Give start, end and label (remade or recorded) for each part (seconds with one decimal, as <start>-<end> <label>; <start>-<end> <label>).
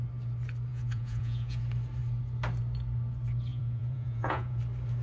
0.0-0.7 recorded; 0.7-1.6 remade; 1.6-3.5 recorded; 3.5-4.6 remade; 4.6-5.0 recorded